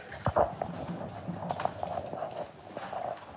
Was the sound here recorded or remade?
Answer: recorded